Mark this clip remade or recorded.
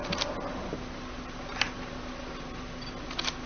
recorded